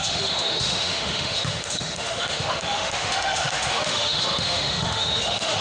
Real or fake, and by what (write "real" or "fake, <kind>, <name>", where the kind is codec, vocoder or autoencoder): fake, autoencoder, DAC-VAE